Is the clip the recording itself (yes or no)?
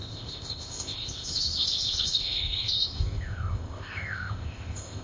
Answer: no